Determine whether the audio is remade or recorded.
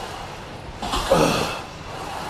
remade